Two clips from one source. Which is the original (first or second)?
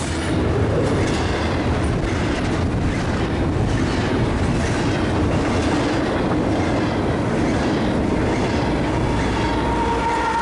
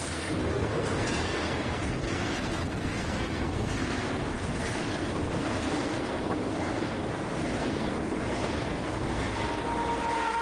first